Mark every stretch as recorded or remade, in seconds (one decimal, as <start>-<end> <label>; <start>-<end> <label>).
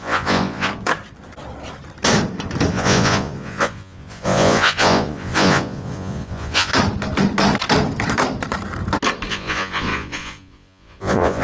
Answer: 0.0-0.7 remade; 0.7-2.7 recorded; 2.7-6.7 remade; 6.7-9.3 recorded; 9.3-11.4 remade